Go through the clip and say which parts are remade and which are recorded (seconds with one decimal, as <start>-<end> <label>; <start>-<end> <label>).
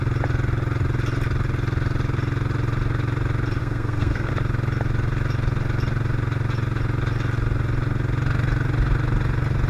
0.0-3.6 recorded; 3.6-4.3 remade; 4.3-9.7 recorded